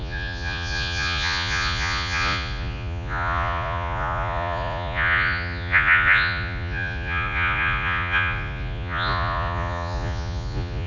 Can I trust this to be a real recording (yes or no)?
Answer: no